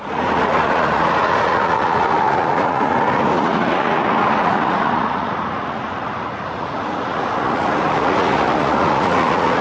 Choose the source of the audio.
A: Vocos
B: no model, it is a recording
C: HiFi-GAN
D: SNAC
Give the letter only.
A